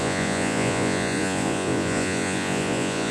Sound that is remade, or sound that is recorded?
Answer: remade